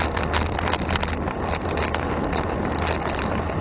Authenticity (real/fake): real